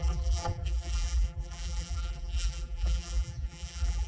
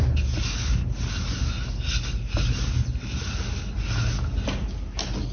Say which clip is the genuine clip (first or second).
second